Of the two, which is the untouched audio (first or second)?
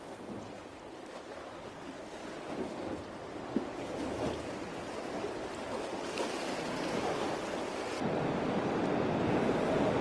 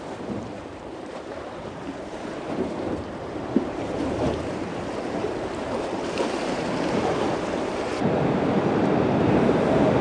first